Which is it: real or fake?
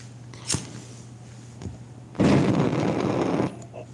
real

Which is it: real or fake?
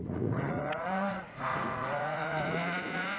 fake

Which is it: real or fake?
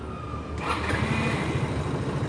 real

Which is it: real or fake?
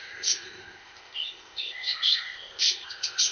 fake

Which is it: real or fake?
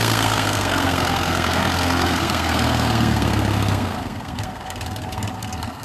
fake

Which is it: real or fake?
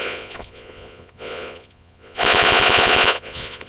fake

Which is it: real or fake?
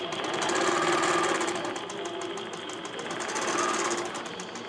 real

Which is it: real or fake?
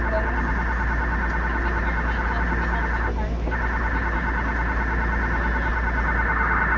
real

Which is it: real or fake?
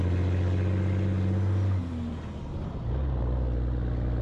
real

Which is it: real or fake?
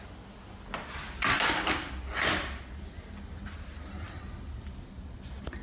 real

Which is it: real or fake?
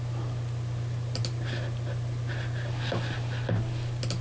real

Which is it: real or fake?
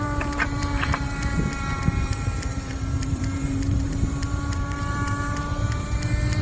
fake